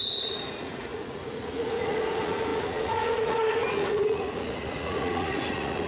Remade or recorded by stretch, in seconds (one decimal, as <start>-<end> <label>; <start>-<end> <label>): 0.0-5.9 remade